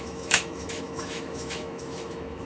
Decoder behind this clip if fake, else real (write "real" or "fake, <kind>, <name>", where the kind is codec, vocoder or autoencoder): fake, autoencoder, DAC-VAE